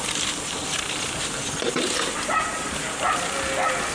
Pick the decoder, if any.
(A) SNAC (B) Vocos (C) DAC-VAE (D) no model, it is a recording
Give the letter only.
D